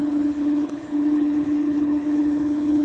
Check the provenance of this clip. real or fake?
fake